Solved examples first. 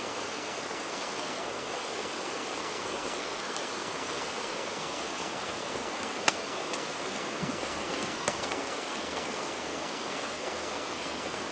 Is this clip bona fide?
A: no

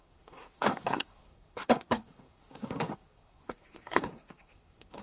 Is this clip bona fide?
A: no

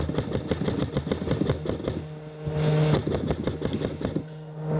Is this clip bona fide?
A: yes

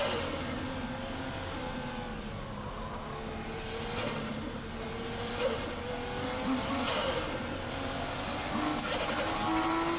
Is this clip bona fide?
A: yes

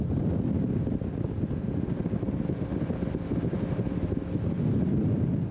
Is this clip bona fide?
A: no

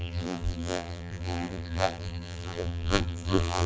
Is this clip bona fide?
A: no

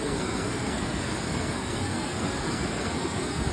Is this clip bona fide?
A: no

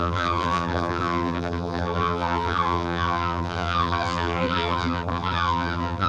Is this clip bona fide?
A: no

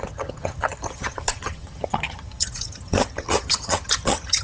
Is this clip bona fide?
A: no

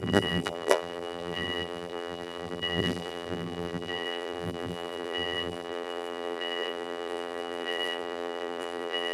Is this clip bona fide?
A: no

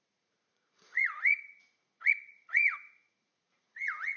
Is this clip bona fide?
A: no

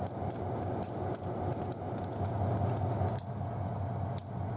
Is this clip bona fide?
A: yes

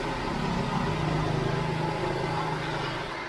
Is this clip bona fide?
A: yes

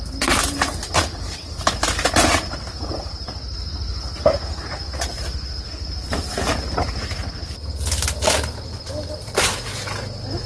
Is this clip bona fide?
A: yes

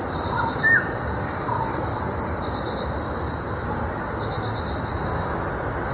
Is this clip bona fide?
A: yes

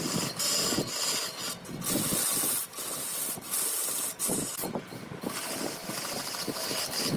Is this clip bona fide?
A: yes